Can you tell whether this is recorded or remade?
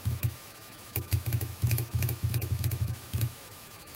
remade